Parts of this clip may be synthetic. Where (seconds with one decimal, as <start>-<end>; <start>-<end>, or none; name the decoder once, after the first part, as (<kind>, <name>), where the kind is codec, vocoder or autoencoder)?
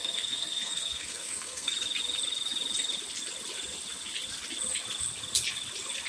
0.0-1.7 (codec, SNAC)